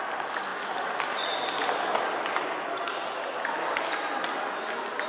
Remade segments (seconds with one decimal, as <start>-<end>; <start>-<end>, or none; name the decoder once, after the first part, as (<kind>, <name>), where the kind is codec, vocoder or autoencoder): none